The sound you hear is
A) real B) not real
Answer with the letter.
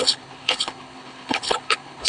B